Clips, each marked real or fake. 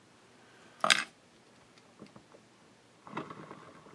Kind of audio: real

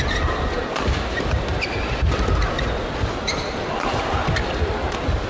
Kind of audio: real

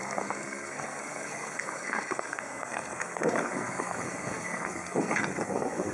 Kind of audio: fake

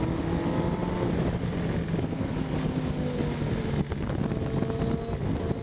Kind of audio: real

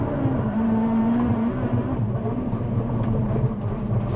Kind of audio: fake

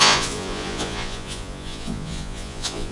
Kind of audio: fake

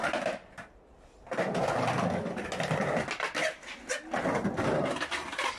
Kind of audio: real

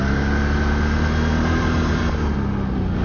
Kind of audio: real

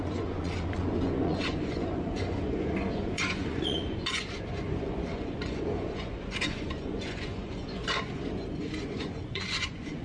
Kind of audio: fake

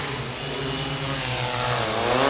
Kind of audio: real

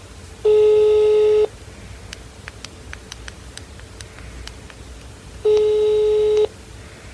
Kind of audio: real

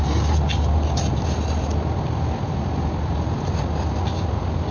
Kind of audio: real